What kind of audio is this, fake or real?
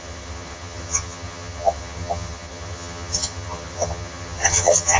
fake